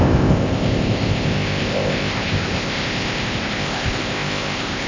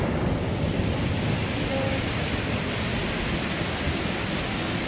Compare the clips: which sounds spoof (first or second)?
first